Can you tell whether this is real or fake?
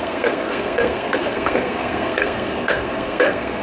fake